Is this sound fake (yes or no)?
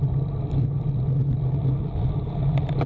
no